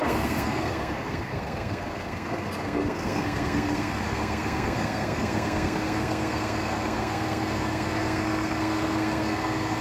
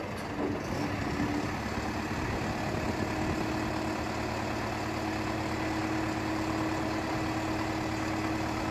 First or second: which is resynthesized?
first